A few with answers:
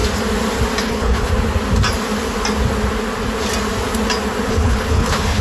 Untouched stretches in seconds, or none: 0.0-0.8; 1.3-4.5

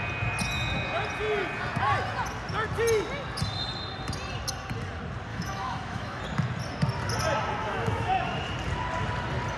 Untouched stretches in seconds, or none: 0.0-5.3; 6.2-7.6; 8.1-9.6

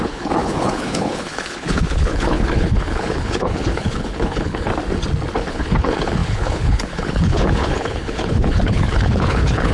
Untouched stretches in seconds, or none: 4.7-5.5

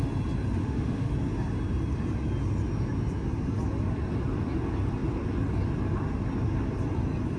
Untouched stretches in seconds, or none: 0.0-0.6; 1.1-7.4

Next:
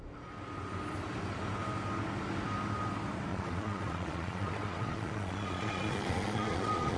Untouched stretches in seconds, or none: 0.0-3.3

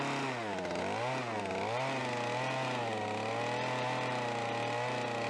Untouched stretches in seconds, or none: 0.0-5.3

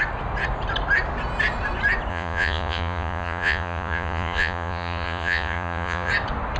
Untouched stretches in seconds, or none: 0.0-2.1; 6.1-6.6

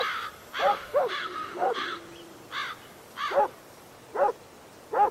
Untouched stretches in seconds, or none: 0.0-0.7; 2.0-5.1